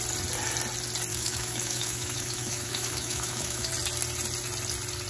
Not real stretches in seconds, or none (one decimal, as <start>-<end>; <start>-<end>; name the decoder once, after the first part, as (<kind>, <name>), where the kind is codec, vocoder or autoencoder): 1.1-3.7 (autoencoder, DAC-VAE)